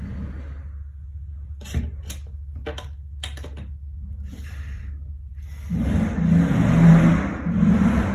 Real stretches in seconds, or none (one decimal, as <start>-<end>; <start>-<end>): 0.0-8.1